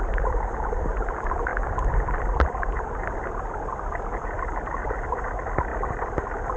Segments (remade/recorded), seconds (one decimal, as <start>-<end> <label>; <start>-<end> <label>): 0.0-6.6 remade